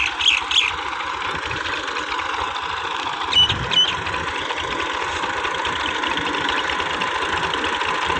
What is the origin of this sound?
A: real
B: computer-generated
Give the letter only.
A